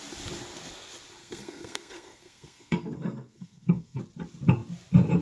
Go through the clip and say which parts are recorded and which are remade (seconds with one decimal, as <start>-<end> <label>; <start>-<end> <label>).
0.0-1.2 recorded; 1.2-4.0 remade; 4.0-5.2 recorded